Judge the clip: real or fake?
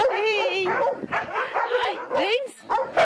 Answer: fake